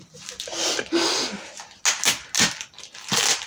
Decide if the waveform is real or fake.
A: real